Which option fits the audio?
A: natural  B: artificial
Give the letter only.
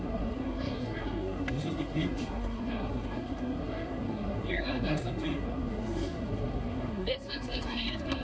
B